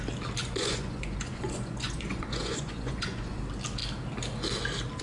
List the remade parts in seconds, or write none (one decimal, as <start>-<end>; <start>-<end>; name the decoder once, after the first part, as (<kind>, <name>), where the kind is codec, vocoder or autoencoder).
0.4-3.4 (vocoder, Vocos)

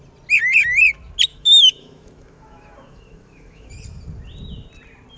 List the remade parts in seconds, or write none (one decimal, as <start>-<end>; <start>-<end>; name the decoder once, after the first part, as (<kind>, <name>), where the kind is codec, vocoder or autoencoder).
1.3-3.7 (autoencoder, DAC-VAE)

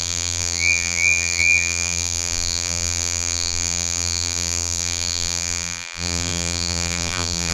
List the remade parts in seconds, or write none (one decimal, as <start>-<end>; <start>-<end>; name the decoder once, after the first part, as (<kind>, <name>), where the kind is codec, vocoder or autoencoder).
0.0-7.5 (vocoder, BigVGAN v2)

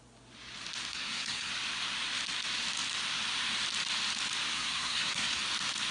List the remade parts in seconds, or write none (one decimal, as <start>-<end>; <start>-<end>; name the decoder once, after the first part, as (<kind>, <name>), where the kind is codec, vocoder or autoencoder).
0.9-1.5 (codec, SNAC); 4.5-5.4

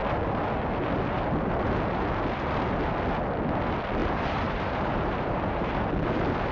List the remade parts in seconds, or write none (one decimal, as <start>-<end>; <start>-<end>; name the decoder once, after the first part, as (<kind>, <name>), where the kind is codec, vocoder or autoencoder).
4.0-5.7 (vocoder, BigVGAN v2)